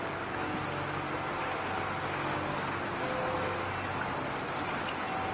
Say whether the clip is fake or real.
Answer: real